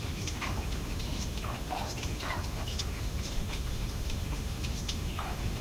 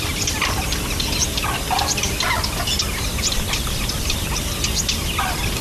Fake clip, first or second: first